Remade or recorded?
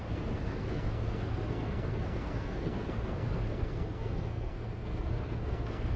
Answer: remade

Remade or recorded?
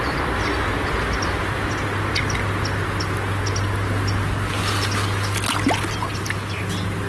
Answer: recorded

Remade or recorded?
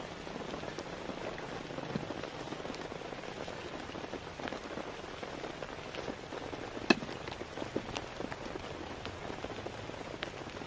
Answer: recorded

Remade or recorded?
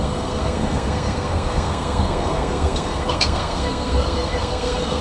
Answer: remade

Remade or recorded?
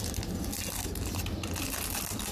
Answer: recorded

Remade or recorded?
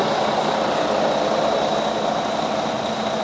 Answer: recorded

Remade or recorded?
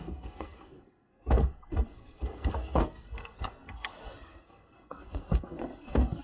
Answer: remade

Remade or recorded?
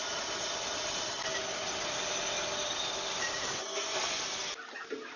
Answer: recorded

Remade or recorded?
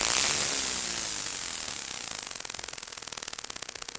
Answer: recorded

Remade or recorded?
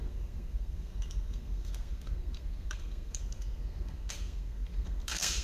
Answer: remade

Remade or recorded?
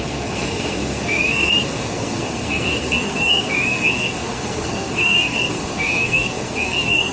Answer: remade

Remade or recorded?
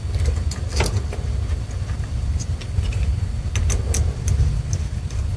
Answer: recorded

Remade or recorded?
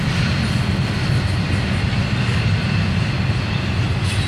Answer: recorded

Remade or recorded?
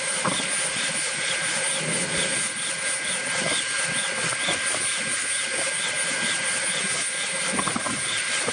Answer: recorded